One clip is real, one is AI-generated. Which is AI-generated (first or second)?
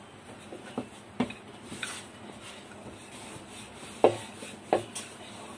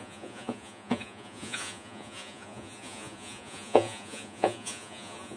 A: second